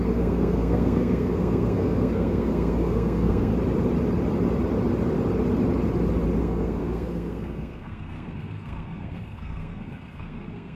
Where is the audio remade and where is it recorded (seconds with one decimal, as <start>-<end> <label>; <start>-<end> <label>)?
0.0-3.5 remade; 3.5-6.4 recorded; 6.4-10.8 remade

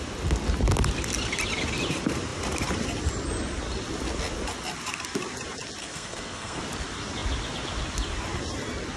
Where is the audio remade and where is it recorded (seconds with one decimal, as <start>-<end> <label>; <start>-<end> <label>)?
0.0-5.8 recorded; 5.8-6.6 remade; 6.6-9.0 recorded